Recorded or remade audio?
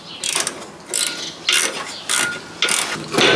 recorded